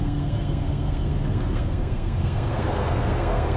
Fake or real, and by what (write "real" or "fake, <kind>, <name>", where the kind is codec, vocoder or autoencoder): fake, codec, SNAC